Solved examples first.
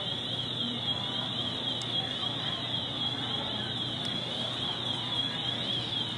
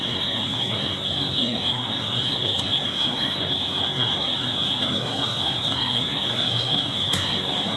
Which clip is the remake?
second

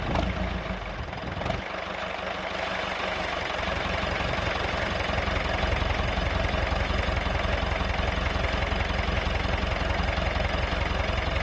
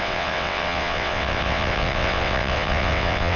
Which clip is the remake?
second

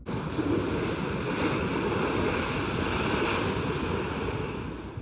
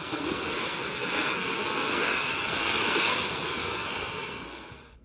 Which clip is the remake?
second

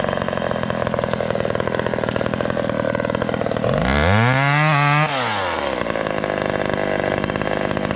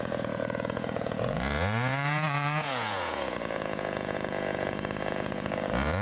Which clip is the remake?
second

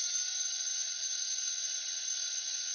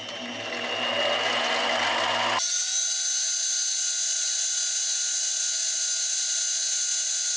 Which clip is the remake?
first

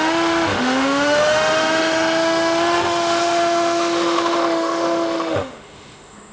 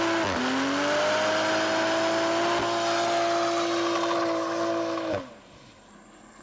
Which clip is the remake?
first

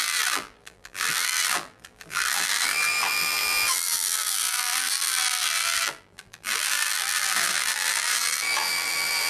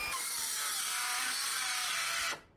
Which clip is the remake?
first